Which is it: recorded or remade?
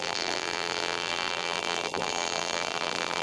remade